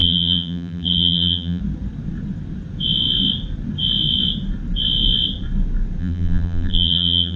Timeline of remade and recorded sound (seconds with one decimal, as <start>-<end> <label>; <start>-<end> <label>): 0.0-1.6 remade; 1.6-6.0 recorded; 6.0-7.4 remade